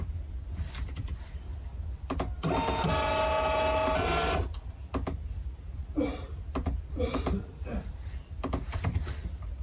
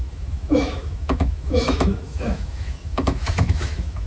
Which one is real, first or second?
first